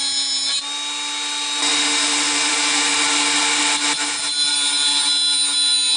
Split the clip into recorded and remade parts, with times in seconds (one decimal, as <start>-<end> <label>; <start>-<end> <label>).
0.0-6.0 recorded